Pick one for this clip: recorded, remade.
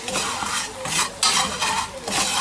recorded